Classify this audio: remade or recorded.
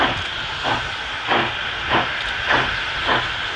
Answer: recorded